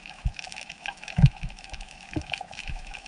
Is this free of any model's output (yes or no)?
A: no